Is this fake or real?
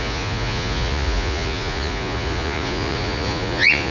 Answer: fake